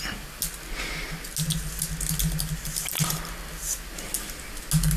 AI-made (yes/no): no